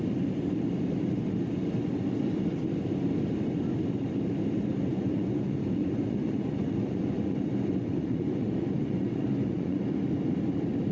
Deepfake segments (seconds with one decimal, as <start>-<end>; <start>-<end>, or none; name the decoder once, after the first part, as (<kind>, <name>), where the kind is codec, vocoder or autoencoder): 4.9-9.8 (vocoder, Vocos)